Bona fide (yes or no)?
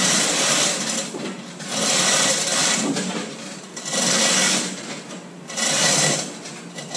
yes